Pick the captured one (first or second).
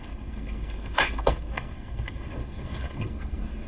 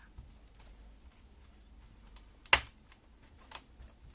second